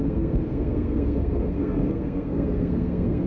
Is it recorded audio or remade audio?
remade